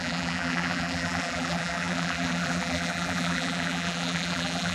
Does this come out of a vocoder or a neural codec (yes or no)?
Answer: yes